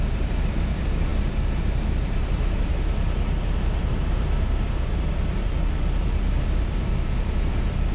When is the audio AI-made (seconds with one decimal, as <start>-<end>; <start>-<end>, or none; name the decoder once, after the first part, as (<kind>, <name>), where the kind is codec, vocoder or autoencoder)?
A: 0.0-2.7 (vocoder, BigVGAN v2); 3.9-7.9